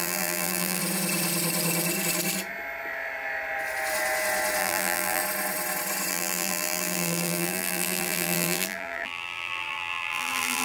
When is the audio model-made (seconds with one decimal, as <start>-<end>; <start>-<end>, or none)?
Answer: 0.0-0.8; 4.6-5.2; 6.1-10.6

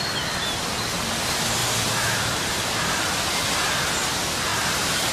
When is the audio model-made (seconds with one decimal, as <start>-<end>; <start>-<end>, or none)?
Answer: 1.6-3.0; 4.5-5.1

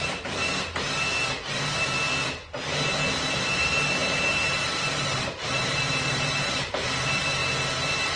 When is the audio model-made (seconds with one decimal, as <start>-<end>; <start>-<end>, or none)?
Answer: 0.0-0.4; 3.4-7.4

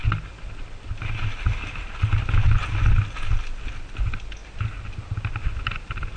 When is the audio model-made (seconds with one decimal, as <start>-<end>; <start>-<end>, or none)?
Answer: none

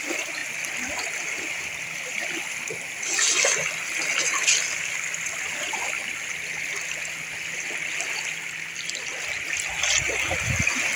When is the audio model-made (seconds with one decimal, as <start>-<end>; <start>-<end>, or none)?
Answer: none

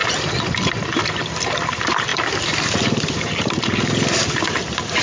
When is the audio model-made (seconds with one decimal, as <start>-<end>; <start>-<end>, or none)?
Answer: 2.1-2.6

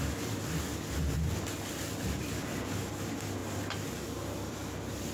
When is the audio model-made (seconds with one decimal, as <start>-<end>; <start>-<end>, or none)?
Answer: none

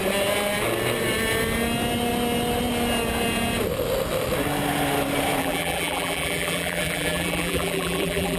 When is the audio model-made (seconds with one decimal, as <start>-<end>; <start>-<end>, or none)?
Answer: 5.4-8.4